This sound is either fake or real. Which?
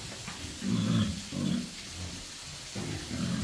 real